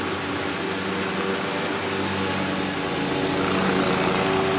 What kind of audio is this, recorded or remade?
recorded